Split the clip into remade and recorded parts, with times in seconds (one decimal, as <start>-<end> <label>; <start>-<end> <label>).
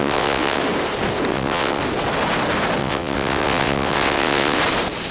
0.0-0.6 remade; 0.6-1.3 recorded; 1.3-1.8 remade; 1.8-2.8 recorded; 2.8-4.6 remade; 4.6-5.1 recorded